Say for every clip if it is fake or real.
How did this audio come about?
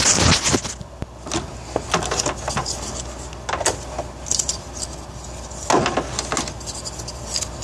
real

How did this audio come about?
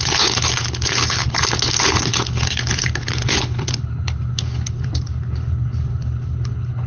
fake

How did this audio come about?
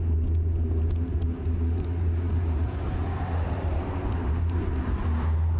real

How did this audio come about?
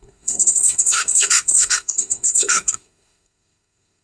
fake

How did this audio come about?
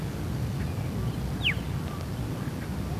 real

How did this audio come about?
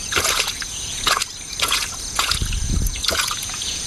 fake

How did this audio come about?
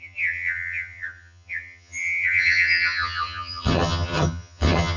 fake